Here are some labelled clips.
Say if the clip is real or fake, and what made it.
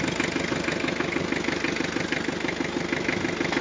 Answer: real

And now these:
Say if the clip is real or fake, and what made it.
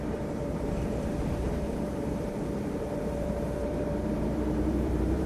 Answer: fake, vocoder, BigVGAN v2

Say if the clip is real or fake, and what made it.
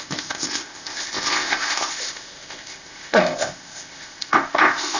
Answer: fake, codec, ZipCodec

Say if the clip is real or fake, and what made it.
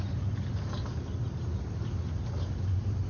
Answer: real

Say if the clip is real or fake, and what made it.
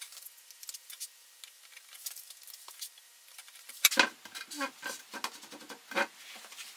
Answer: real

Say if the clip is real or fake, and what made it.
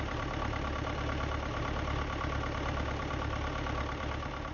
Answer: real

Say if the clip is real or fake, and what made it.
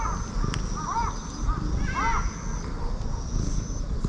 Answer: real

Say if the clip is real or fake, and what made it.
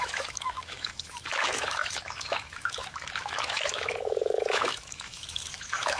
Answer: fake, autoencoder, DAC-VAE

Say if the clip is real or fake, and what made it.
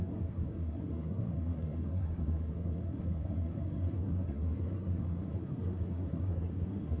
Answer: fake, codec, SNAC